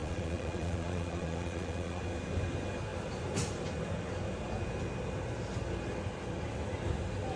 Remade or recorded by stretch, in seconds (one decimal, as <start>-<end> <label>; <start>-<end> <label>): 0.0-2.0 remade; 2.0-7.4 recorded